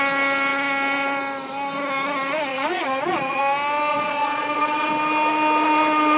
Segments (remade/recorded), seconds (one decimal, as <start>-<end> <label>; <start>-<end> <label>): 0.0-2.5 recorded; 2.5-3.4 remade; 3.4-3.9 recorded; 3.9-4.9 remade; 4.9-6.2 recorded